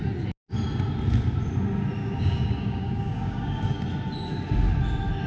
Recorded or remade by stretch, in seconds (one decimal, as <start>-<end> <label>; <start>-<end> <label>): 0.0-2.0 recorded; 2.0-3.6 remade; 3.6-5.3 recorded